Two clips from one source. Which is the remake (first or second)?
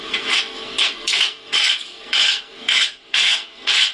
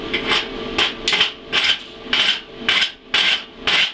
first